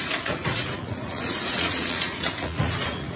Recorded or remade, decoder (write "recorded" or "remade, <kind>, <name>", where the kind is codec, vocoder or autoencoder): remade, vocoder, Vocos